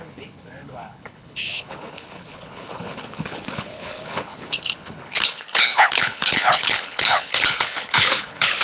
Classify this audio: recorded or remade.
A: remade